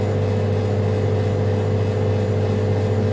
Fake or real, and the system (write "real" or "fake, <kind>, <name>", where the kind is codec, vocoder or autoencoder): real